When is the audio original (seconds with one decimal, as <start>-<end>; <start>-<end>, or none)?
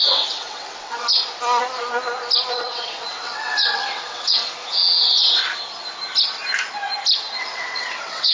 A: 1.2-2.5; 4.4-5.0; 5.4-7.4